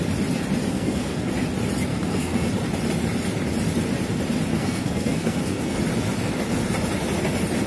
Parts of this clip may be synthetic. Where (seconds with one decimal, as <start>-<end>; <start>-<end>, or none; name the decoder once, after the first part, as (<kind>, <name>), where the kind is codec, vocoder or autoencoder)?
0.7-1.3 (codec, SNAC); 1.9-2.5; 4.5-5.8